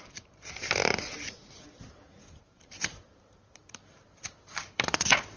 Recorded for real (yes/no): no